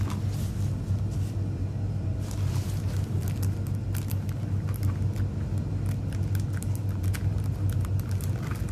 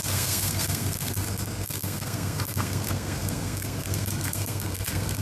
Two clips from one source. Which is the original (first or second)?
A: first